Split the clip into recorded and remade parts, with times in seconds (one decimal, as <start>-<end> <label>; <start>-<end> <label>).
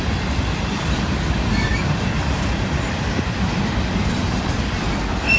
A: 0.0-1.7 recorded; 1.7-4.9 remade; 4.9-5.4 recorded